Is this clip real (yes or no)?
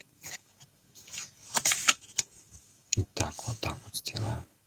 no